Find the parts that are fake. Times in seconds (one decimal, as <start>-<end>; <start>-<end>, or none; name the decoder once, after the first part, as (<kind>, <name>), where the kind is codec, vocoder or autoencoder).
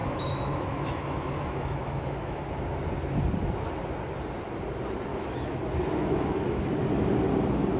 0.0-2.4 (autoencoder, DAC-VAE); 5.1-5.6; 6.0-6.6